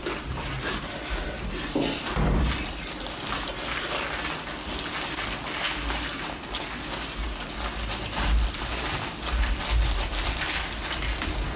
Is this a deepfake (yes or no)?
no